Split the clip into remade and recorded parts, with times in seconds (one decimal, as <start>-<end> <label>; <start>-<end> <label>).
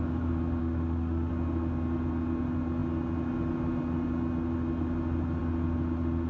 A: 0.0-0.6 recorded; 0.6-1.3 remade; 1.3-6.3 recorded